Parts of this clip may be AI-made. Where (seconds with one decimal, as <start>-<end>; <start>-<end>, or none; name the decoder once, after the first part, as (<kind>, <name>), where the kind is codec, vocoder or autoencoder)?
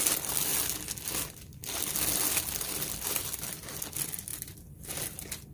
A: none